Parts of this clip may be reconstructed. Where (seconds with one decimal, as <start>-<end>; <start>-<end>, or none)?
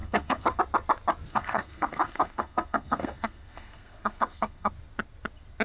0.0-0.6; 1.3-4.7